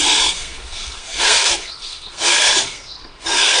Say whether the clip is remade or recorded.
remade